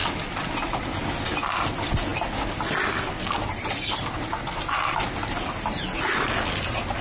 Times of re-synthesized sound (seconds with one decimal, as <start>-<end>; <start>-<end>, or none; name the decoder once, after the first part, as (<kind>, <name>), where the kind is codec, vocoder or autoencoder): none

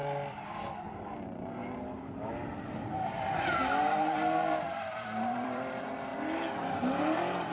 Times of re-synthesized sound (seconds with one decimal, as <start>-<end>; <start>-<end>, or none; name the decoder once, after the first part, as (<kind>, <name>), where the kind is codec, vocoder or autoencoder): 0.0-1.6 (vocoder, BigVGAN v2); 3.8-6.1; 6.6-7.5